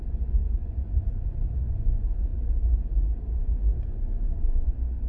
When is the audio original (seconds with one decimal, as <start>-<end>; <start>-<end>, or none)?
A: 2.3-3.4